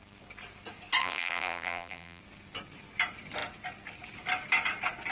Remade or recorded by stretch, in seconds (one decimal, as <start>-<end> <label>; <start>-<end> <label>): 0.0-1.0 recorded; 1.0-2.2 remade; 2.2-5.1 recorded